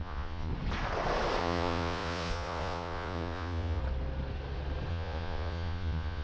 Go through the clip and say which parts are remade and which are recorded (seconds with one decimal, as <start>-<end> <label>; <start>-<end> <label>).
0.0-0.5 remade; 0.5-1.4 recorded; 1.4-3.8 remade; 3.8-4.9 recorded; 4.9-6.2 remade